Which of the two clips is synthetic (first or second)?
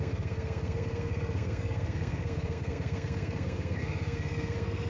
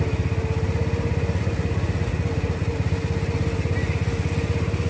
first